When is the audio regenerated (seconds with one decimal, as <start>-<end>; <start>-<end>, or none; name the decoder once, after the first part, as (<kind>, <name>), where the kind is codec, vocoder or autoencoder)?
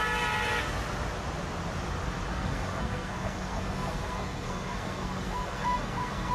2.3-6.3 (codec, SNAC)